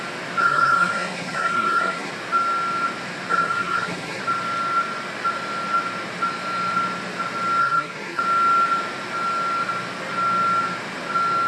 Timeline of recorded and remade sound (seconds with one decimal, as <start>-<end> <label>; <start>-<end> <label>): 0.0-0.4 recorded; 0.4-2.1 remade; 2.1-3.3 recorded; 3.3-4.2 remade; 4.2-7.6 recorded; 7.6-8.2 remade; 8.2-11.5 recorded